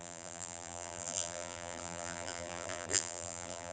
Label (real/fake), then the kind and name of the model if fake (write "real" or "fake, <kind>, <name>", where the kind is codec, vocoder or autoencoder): fake, vocoder, BigVGAN v2